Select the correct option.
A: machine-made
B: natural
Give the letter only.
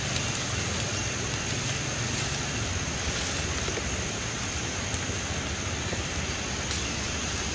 B